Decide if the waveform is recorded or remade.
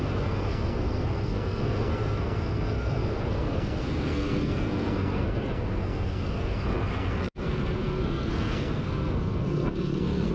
remade